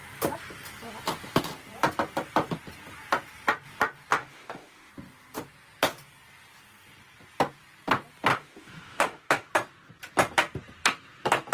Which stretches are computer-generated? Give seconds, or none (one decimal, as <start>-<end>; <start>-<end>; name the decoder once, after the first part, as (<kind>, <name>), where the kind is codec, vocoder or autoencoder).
4.1-4.9 (autoencoder, DAC-VAE); 8.3-9.5